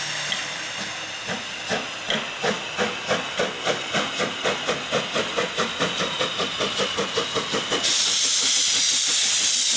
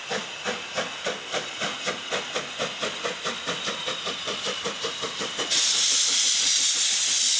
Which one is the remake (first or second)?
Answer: second